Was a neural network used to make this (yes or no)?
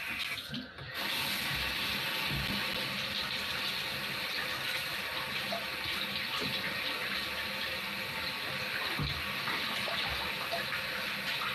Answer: no